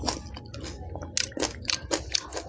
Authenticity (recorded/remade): recorded